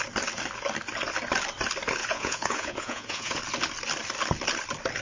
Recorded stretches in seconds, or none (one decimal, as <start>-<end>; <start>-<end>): 0.0-2.0; 3.4-5.0